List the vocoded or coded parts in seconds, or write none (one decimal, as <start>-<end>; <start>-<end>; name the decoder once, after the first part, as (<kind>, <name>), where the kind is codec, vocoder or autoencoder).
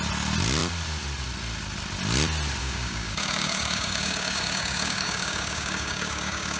2.6-6.6 (codec, DAC)